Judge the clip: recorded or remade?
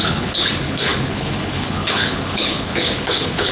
remade